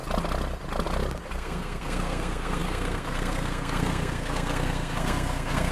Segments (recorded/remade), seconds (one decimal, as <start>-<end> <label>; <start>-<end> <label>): 0.0-1.3 recorded; 1.3-5.7 remade